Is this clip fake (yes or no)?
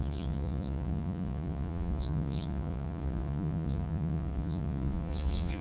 yes